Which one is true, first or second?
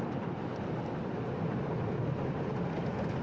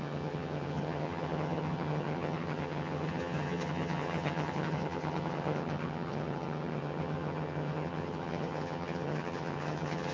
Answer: first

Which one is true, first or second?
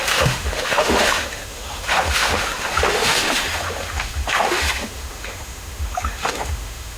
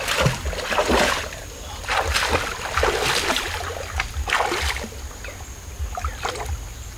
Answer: second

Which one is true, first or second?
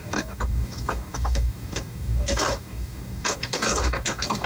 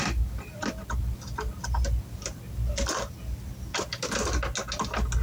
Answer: second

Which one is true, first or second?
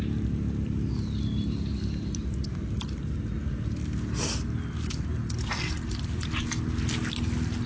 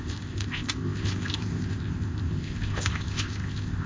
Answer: first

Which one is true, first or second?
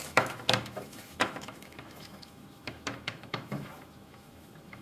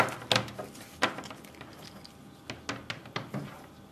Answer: second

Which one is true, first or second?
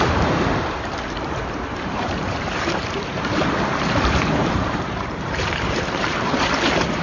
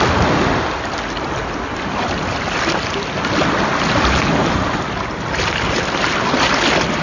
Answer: second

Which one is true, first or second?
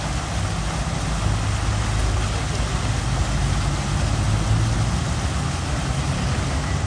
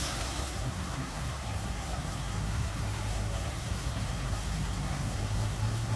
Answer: first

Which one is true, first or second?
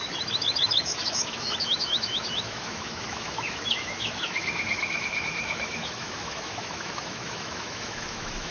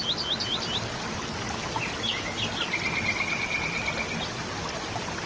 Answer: second